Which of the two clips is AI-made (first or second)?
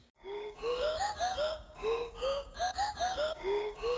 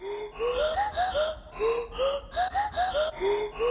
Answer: first